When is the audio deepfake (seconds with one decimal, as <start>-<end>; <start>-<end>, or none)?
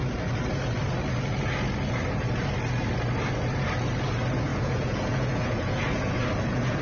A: 4.5-6.2